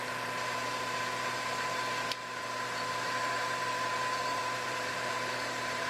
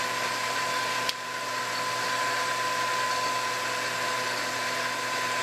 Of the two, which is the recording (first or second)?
second